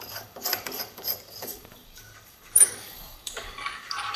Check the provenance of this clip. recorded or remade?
remade